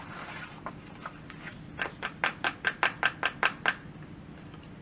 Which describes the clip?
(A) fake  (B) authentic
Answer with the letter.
B